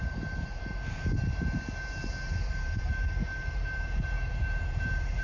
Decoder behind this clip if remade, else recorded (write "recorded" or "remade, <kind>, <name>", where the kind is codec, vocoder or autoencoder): remade, vocoder, BigVGAN v2